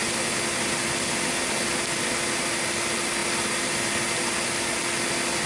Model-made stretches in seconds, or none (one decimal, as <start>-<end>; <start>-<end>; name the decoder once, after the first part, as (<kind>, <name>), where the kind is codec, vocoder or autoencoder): none